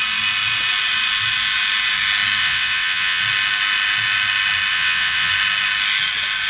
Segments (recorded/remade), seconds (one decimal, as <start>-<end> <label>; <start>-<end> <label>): 0.0-2.4 recorded; 2.4-3.2 remade; 3.2-4.7 recorded; 4.7-5.3 remade; 5.3-6.5 recorded